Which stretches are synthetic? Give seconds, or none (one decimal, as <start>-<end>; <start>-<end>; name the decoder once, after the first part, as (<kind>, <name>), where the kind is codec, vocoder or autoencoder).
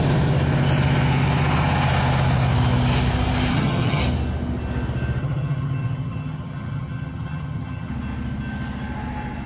3.5-4.0 (vocoder, HiFi-GAN); 5.2-7.9